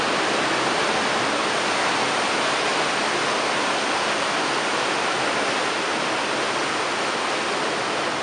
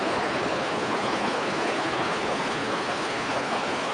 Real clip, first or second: first